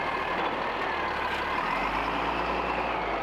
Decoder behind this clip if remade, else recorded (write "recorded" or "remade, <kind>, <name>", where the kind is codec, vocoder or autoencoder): recorded